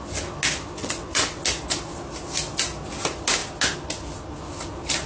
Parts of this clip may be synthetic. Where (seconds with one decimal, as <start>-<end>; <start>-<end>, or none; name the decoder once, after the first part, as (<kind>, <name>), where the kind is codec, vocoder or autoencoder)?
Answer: 0.8-1.4 (vocoder, WaveNeXt)